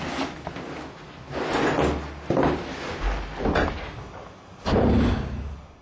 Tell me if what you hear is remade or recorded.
recorded